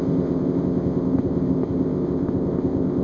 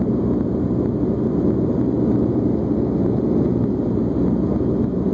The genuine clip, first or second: second